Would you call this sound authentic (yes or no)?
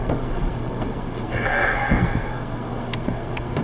no